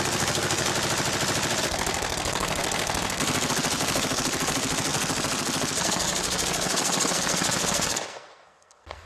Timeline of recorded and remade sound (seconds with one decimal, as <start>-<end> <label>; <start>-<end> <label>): 0.0-0.7 remade; 0.7-1.6 recorded; 1.6-9.1 remade